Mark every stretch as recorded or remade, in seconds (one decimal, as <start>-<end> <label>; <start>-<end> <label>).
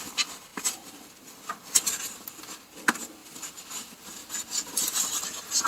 0.0-5.7 recorded